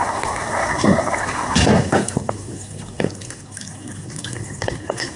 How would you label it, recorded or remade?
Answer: remade